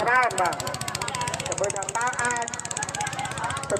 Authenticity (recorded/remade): recorded